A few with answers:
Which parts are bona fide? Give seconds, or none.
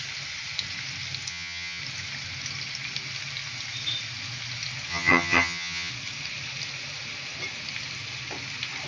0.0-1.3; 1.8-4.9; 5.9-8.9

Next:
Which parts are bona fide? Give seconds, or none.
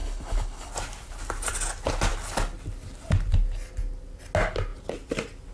0.7-5.5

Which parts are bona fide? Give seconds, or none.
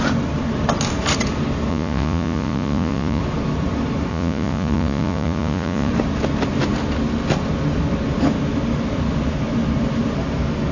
0.0-1.7; 3.2-4.1; 5.9-10.7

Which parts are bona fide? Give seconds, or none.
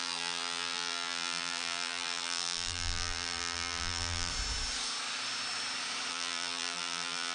4.3-6.1